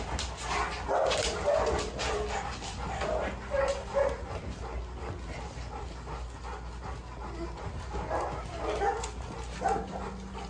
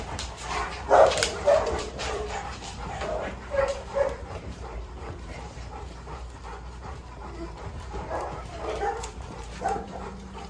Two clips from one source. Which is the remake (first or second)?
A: second